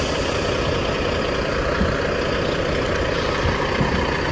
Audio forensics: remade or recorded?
recorded